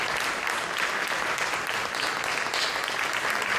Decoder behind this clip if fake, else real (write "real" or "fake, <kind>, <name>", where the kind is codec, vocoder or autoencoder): real